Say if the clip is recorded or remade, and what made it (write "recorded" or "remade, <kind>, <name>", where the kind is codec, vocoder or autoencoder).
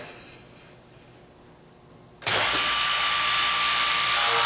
recorded